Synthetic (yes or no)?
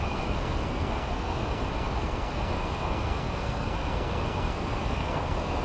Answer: yes